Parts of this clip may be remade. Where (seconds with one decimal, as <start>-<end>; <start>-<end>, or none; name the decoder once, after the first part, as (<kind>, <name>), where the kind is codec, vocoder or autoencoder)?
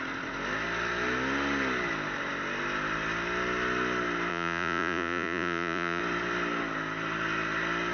4.3-6.0 (vocoder, Vocos)